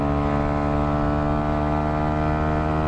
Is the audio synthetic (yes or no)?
no